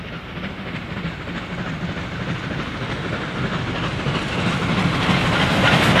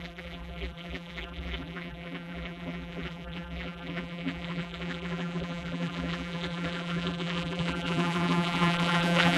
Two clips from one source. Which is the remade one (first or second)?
second